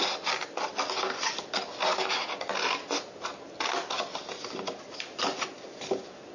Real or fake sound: real